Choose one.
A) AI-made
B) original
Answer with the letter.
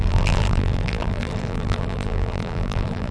A